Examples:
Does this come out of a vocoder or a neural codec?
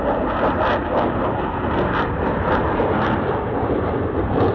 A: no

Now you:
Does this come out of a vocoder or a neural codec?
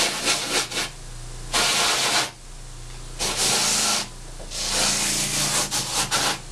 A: no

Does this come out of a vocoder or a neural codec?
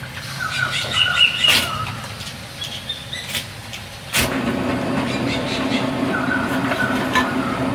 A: no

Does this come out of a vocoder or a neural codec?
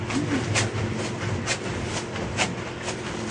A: no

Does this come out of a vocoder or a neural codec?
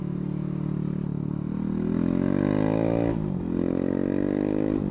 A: no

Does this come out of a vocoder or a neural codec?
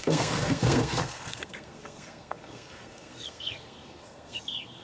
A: yes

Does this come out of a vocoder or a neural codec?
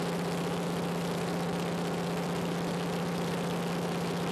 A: no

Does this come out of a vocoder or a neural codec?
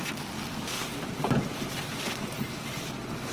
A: no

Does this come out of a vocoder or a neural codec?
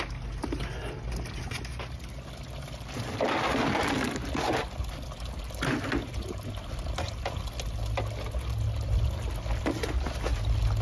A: no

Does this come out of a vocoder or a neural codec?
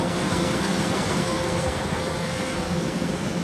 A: yes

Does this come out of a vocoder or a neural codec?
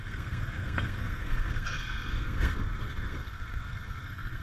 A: yes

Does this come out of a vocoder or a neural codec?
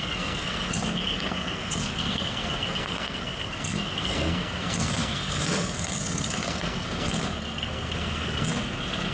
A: yes